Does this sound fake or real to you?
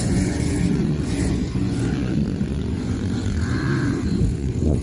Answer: fake